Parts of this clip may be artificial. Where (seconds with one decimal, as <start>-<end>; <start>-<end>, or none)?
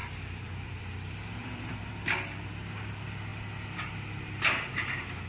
0.0-1.9